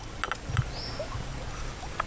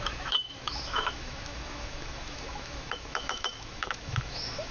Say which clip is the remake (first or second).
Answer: second